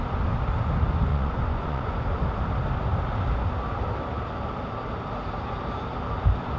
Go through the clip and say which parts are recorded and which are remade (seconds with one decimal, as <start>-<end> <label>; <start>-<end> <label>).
0.0-1.1 recorded; 1.1-2.0 remade; 2.0-6.6 recorded